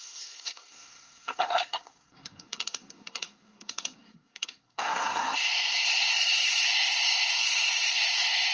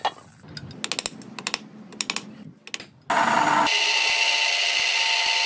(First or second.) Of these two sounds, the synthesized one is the first